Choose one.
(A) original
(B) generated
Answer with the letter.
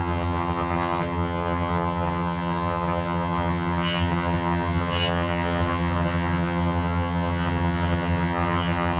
B